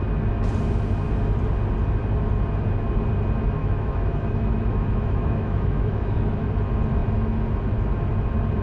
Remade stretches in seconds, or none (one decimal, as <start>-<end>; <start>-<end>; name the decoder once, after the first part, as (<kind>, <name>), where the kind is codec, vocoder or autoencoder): 3.6-6.4 (autoencoder, DAC-VAE)